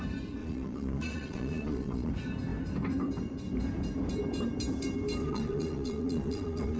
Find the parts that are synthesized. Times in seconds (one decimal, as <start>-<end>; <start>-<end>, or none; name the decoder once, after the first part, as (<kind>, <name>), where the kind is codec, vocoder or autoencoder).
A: 0.4-2.1 (vocoder, Vocos); 5.2-6.8